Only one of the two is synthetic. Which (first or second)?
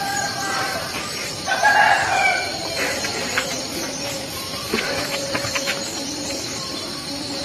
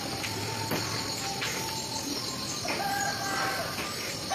first